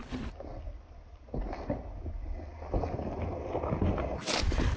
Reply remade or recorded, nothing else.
recorded